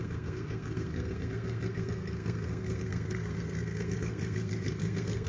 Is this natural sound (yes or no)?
no